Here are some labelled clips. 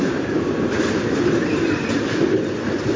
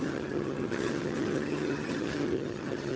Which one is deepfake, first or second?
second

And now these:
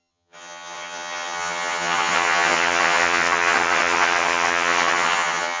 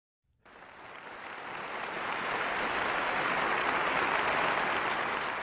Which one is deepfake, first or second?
first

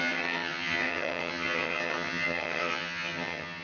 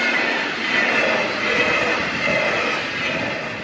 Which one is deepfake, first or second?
first